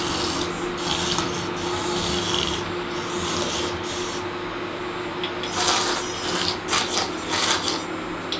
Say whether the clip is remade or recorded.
recorded